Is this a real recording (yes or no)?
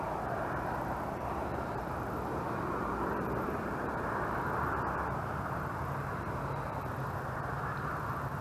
no